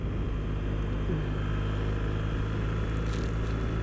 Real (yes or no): yes